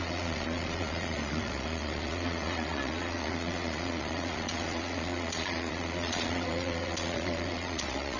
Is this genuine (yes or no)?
no